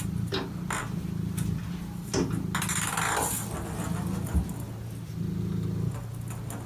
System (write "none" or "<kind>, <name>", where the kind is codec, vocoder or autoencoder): none